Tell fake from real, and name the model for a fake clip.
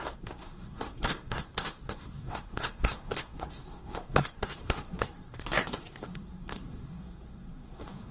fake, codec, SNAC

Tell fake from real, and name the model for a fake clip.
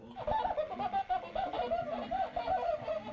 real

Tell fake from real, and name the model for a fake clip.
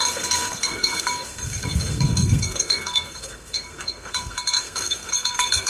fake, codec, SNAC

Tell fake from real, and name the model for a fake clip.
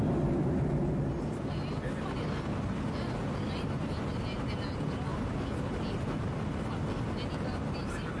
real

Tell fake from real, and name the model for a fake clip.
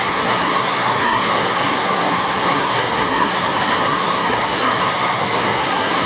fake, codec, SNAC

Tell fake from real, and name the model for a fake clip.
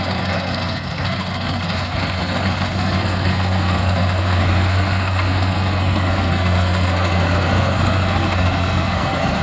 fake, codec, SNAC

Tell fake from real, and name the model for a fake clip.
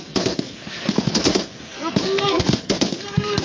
fake, codec, SNAC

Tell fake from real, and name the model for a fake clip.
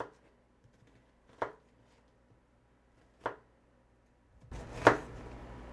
real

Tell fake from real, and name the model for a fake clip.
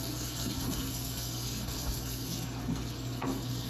fake, codec, SNAC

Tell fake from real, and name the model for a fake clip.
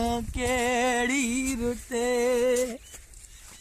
real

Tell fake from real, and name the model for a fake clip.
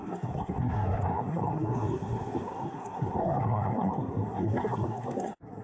fake, codec, SNAC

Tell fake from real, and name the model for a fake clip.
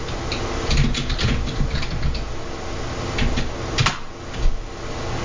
real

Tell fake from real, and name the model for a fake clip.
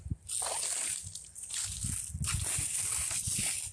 real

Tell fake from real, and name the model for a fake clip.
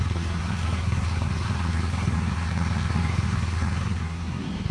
fake, codec, SNAC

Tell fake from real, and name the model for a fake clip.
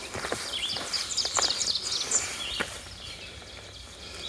real